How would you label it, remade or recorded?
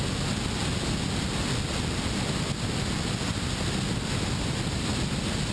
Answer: recorded